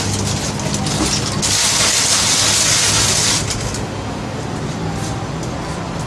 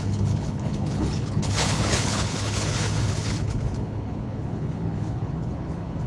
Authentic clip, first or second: first